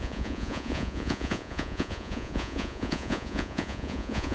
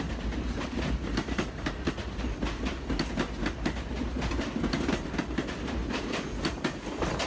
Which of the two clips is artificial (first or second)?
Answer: first